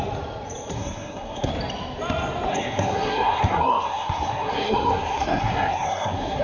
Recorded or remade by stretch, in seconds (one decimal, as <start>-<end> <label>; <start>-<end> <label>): 0.0-0.7 recorded; 0.7-1.5 remade; 1.5-2.5 recorded; 2.5-6.4 remade